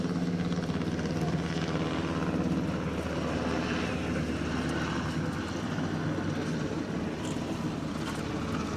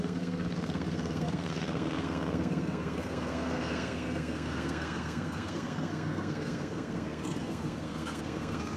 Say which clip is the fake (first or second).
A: second